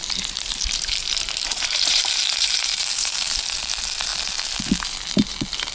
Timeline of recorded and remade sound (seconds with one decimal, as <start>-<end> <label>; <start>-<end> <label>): 0.0-3.4 remade; 3.4-5.7 recorded